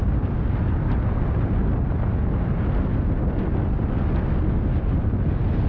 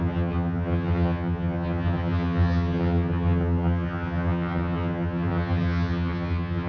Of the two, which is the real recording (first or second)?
first